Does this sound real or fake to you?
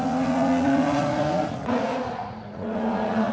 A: fake